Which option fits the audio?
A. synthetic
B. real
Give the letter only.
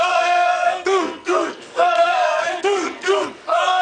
A